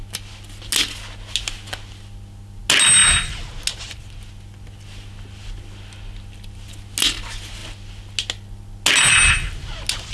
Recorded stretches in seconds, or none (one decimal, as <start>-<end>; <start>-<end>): 0.0-10.1